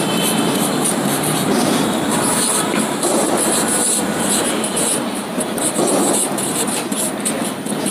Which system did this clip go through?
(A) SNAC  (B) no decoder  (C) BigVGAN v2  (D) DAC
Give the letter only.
C